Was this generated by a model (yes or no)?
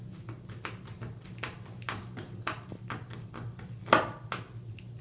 no